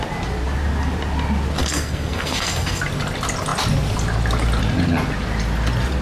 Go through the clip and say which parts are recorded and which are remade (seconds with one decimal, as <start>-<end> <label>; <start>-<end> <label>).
0.0-1.6 recorded; 1.6-2.8 remade; 2.8-6.0 recorded